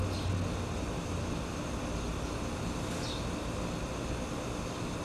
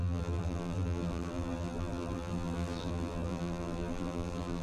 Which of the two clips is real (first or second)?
first